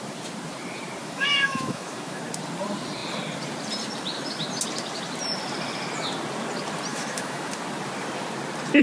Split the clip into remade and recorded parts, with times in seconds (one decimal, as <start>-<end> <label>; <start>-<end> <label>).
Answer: 0.0-1.0 recorded; 1.0-2.2 remade; 2.2-6.9 recorded; 6.9-7.5 remade; 7.5-8.8 recorded